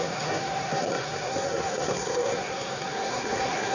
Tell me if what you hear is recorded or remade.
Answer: remade